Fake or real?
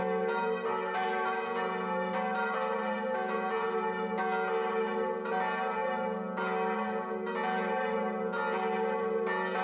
real